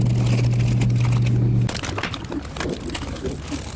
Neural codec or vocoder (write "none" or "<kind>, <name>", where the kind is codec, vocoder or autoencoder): none